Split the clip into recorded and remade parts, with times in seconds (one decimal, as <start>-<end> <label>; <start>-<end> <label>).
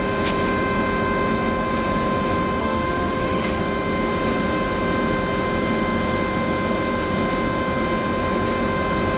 0.0-2.6 recorded; 2.6-3.6 remade; 3.6-9.2 recorded